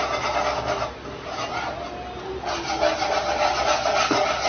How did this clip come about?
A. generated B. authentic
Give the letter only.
B